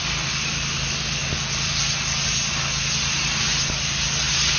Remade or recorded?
recorded